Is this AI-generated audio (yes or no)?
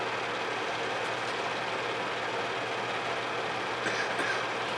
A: no